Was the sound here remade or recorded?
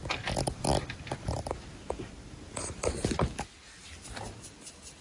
recorded